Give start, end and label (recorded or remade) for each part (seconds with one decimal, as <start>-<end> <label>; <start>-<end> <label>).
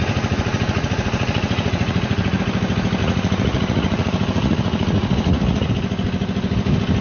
0.0-2.4 remade; 2.4-3.0 recorded; 3.0-5.7 remade; 5.7-7.0 recorded